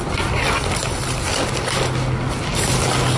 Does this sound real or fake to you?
real